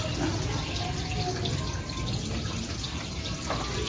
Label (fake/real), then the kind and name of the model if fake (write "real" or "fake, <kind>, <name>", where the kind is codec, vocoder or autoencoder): real